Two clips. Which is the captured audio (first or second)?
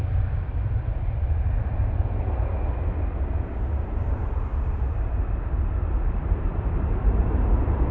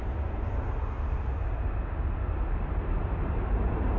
second